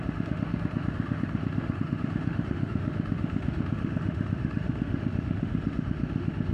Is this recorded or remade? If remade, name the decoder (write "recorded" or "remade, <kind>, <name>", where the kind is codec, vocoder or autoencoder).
remade, autoencoder, DAC-VAE